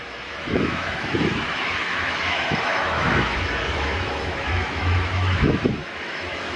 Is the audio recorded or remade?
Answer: remade